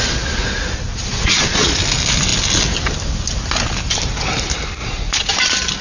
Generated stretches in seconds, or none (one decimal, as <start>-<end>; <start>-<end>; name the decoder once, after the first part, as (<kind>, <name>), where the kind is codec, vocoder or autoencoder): 0.9-1.8 (vocoder, Vocos); 4.8-5.3